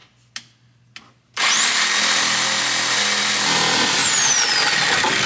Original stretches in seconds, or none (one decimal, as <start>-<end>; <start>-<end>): 0.0-5.3